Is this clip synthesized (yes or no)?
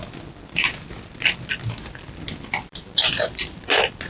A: no